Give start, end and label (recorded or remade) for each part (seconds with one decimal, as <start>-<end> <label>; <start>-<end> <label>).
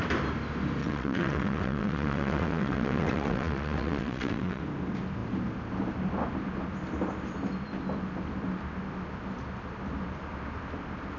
0.0-0.8 recorded; 0.8-4.6 remade; 4.6-11.2 recorded